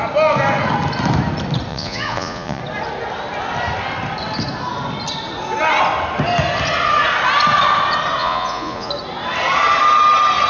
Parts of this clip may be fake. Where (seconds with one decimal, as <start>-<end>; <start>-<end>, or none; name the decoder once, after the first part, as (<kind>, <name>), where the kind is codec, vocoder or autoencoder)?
1.7-2.6 (vocoder, Vocos); 8.2-8.9